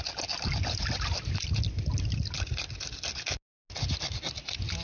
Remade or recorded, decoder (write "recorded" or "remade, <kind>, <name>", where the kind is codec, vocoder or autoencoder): recorded